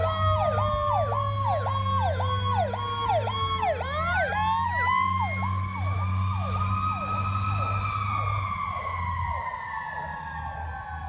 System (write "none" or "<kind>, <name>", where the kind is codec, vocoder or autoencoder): none